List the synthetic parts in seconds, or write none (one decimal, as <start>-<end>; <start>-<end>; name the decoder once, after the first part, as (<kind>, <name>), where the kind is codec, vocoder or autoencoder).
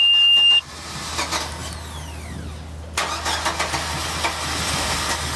none